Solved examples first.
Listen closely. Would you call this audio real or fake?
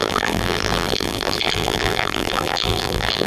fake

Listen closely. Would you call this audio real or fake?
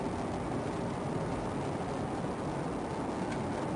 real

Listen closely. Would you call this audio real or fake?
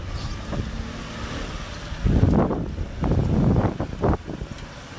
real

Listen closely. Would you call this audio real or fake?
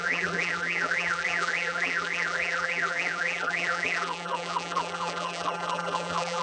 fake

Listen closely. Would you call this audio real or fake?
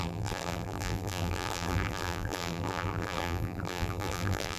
fake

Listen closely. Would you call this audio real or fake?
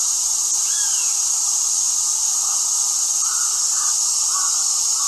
real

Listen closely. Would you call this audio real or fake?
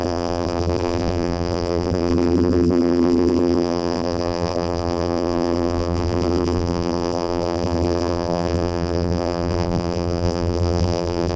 fake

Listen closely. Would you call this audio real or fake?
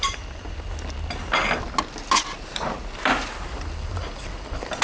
real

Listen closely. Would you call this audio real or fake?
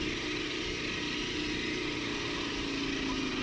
real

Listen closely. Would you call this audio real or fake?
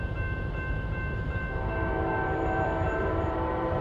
fake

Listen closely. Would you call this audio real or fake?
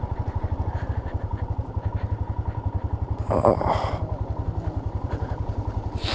fake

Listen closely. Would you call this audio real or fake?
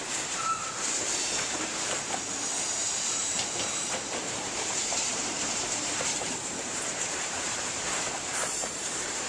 fake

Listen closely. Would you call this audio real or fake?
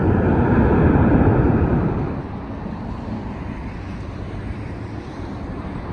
fake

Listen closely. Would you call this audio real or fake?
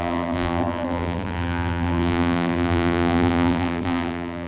fake